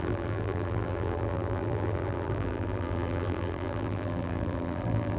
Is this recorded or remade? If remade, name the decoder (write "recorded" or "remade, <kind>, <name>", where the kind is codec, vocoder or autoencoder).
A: remade, vocoder, BigVGAN v2